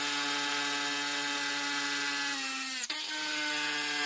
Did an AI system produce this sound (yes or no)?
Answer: no